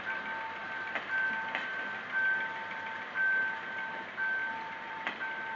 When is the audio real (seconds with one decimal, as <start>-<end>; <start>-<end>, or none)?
0.0-4.4; 5.0-5.6